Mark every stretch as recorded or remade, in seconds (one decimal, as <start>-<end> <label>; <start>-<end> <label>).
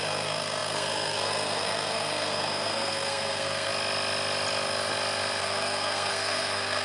0.0-3.7 remade; 3.7-5.4 recorded; 5.4-6.8 remade